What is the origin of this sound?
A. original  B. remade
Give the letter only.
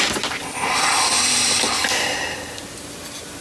A